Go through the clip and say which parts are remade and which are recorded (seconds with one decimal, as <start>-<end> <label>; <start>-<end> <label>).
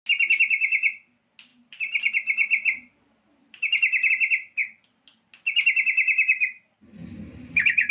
0.0-1.5 recorded; 1.5-4.1 remade; 4.1-7.9 recorded